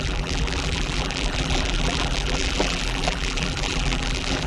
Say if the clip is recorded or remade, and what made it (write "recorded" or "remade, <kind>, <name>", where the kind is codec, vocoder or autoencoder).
remade, vocoder, BigVGAN v2